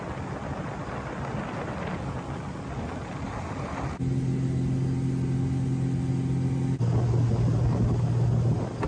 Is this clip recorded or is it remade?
recorded